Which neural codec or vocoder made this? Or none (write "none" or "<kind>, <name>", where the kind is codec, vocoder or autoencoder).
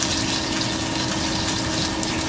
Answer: none